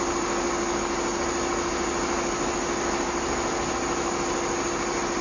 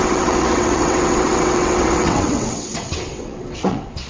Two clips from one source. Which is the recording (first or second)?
first